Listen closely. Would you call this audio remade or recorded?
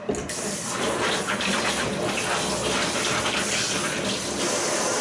recorded